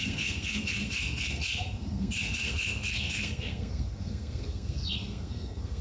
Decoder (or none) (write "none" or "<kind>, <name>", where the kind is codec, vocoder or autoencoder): codec, SNAC